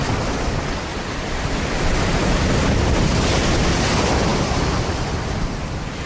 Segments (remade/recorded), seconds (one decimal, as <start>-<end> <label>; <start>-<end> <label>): 0.0-4.3 recorded; 4.3-5.1 remade; 5.1-6.1 recorded

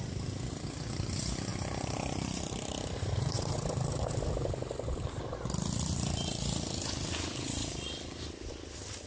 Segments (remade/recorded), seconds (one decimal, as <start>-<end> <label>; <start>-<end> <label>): 0.0-1.5 recorded; 1.5-4.3 remade; 4.3-9.1 recorded

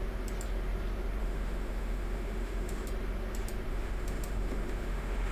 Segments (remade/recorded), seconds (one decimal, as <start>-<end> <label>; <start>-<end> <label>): 0.0-1.2 recorded; 1.2-2.9 remade; 2.9-3.7 recorded; 3.7-5.3 remade